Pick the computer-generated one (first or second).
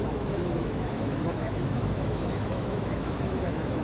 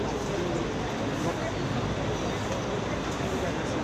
first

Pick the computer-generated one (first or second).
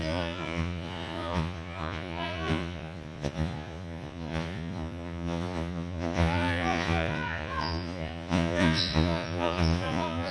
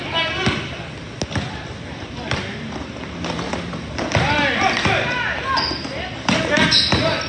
first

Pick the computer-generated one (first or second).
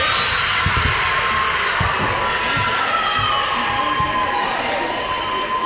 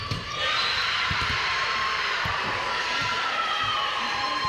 second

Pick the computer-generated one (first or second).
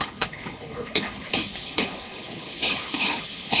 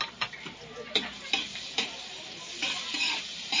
first